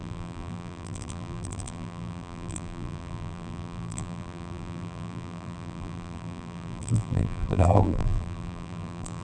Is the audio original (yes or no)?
no